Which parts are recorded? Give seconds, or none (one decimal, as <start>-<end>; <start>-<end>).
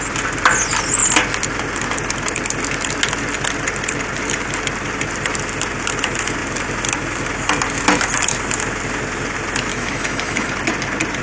0.0-9.7; 10.5-11.2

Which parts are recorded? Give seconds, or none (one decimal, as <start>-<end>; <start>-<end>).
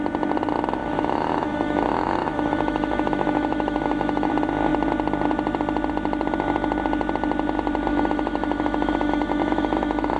0.0-0.8; 4.3-7.9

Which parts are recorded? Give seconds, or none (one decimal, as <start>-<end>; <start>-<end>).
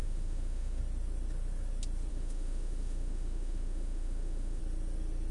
0.8-2.1; 4.6-5.3